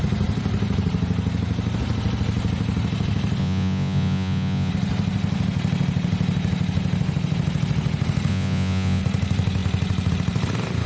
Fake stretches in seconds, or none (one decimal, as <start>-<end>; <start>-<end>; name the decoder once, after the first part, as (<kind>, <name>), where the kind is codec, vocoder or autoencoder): 3.4-4.7 (vocoder, Vocos); 8.3-9.0